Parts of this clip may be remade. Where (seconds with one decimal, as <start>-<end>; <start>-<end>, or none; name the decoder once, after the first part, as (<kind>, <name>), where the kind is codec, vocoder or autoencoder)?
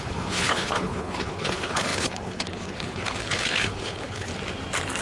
0.0-4.3 (codec, HILCodec)